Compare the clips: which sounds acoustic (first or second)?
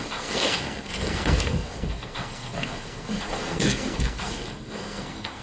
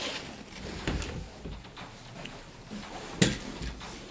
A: second